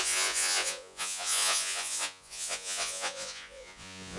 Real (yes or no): no